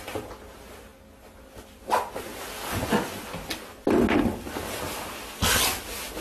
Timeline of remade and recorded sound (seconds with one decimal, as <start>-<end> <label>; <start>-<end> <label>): 0.0-6.2 recorded